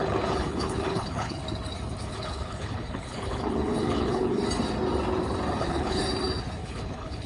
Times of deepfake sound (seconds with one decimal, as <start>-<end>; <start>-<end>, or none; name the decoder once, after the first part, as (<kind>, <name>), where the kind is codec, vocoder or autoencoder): 0.0-1.4 (codec, HILCodec); 2.0-4.4; 5.6-6.0; 6.6-7.3